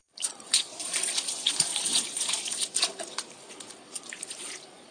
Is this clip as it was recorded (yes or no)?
no